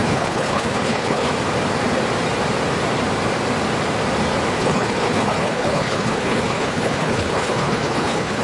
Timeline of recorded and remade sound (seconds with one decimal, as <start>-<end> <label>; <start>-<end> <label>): 0.0-1.3 remade; 1.3-4.6 recorded; 4.6-8.4 remade